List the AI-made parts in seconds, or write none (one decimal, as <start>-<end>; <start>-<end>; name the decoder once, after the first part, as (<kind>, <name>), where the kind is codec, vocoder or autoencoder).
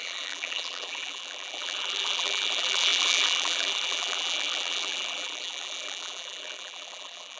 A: 0.0-7.4 (vocoder, BigVGAN v2)